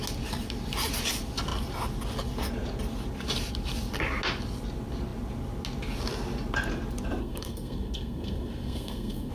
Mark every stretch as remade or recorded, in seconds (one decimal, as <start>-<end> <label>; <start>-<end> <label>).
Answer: 0.0-7.2 recorded; 7.2-9.3 remade